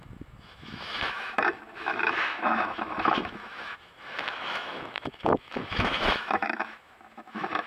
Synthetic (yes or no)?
yes